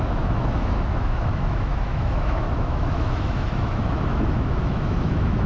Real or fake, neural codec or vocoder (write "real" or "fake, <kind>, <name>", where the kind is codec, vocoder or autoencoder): fake, autoencoder, DAC-VAE